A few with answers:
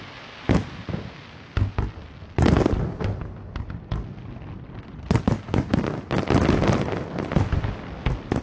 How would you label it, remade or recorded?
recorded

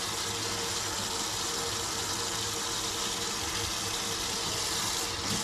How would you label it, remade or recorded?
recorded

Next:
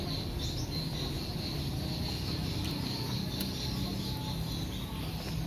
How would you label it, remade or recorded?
recorded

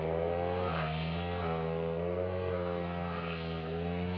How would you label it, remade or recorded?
remade